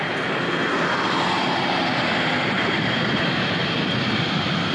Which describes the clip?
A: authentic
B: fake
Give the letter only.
A